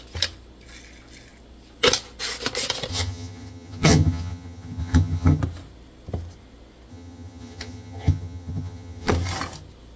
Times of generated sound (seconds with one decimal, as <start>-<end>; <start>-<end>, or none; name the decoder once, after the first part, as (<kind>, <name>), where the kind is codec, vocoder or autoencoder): 2.9-5.4 (vocoder, HiFi-GAN); 6.9-9.1

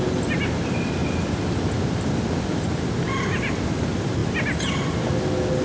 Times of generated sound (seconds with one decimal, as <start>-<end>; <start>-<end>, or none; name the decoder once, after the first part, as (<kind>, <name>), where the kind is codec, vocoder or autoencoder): none